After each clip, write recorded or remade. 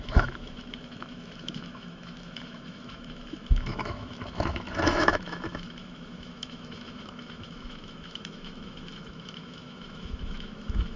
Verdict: remade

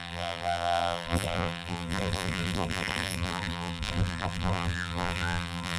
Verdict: remade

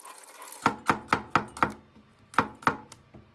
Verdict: recorded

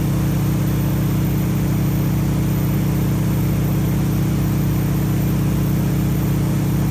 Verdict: recorded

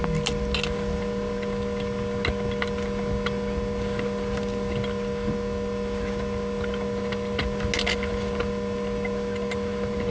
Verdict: recorded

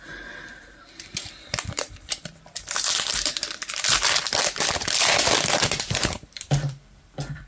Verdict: remade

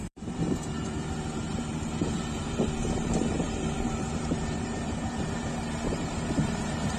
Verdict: remade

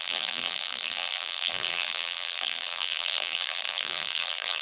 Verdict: remade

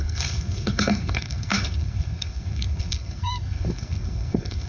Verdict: remade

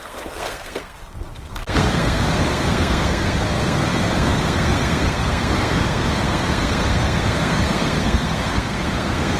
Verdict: remade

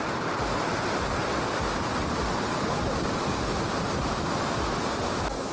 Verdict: recorded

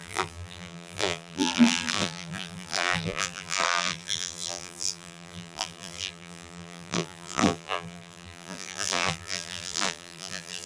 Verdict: remade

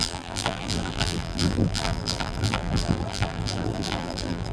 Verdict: remade